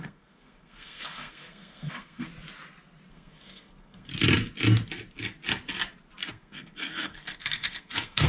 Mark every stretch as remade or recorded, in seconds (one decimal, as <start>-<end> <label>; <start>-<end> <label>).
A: 0.0-2.3 remade; 2.3-3.1 recorded; 3.1-4.1 remade; 4.1-6.3 recorded; 6.3-8.3 remade